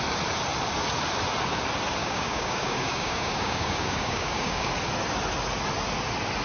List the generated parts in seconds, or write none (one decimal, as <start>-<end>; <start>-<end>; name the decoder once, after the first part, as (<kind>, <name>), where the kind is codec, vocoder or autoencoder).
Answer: 2.0-4.7 (codec, DAC)